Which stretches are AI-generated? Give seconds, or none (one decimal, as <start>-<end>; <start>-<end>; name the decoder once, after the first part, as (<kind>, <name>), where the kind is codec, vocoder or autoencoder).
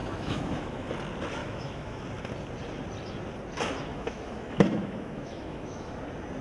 0.0-0.9 (autoencoder, DAC-VAE); 1.4-2.0; 3.9-6.0